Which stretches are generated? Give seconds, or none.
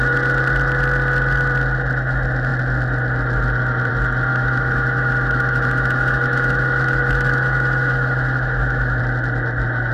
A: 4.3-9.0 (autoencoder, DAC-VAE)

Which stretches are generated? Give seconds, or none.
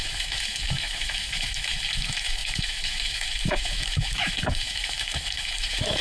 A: 0.0-6.0 (autoencoder, DAC-VAE)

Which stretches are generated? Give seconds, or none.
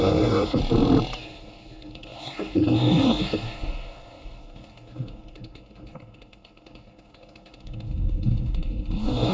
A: 0.0-0.6 (codec, SNAC); 1.2-9.3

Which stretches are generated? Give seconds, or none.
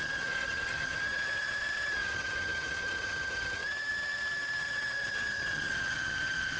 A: 0.0-6.6 (vocoder, HiFi-GAN)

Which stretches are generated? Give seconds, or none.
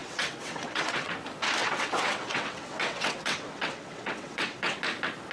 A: 0.0-1.1 (vocoder, WaveNeXt); 1.6-4.8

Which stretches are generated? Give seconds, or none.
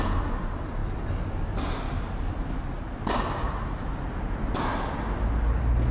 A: none